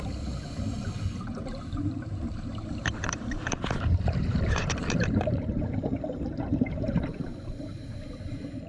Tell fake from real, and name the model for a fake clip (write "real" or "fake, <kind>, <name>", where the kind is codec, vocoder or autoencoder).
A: fake, vocoder, BigVGAN v2